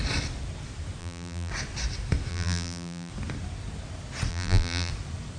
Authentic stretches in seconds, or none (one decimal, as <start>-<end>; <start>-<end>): 0.0-1.0; 1.5-2.3; 3.1-4.3; 4.9-5.4